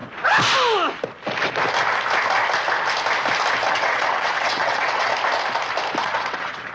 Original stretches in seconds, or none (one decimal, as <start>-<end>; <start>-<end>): 0.0-3.7; 5.1-6.0